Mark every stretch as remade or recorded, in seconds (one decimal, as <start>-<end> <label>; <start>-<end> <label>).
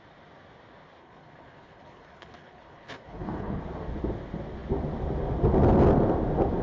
0.0-1.0 recorded; 1.0-3.6 remade; 3.6-6.6 recorded